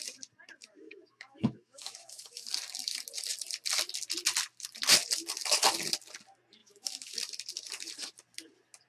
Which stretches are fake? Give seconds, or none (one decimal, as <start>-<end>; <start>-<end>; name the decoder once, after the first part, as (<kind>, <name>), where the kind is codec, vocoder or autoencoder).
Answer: 0.6-2.5 (autoencoder, DAC-VAE); 6.6-7.1